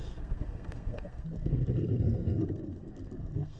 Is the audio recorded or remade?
remade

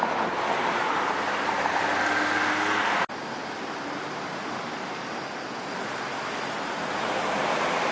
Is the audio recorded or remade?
recorded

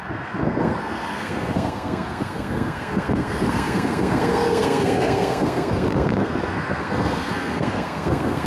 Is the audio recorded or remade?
remade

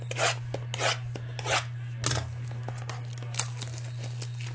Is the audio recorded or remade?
recorded